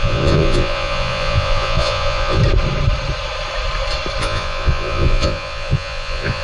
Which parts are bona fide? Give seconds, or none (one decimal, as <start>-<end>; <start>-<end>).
2.4-4.2